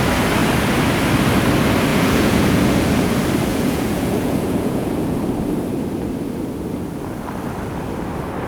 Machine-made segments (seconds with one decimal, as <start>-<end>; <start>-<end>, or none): 1.9-2.7; 3.5-5.2